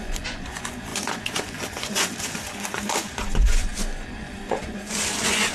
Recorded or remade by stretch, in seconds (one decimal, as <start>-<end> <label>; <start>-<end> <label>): 0.0-5.5 remade